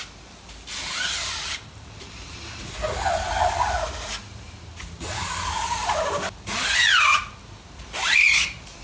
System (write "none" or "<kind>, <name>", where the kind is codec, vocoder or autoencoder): none